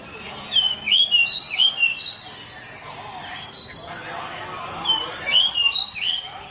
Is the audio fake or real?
real